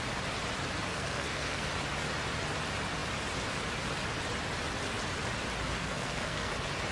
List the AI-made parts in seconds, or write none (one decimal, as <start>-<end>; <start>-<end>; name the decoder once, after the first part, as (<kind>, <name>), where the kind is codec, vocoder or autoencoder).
0.9-1.7 (codec, SNAC); 5.8-6.5